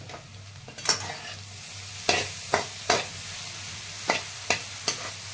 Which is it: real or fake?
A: real